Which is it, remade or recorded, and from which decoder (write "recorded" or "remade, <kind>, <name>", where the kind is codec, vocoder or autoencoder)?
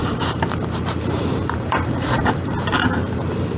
remade, vocoder, BigVGAN v2